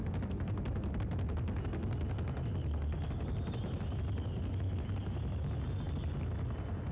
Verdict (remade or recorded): recorded